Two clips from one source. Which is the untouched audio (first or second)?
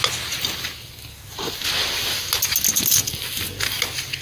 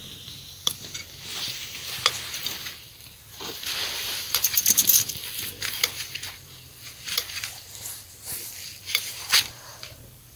first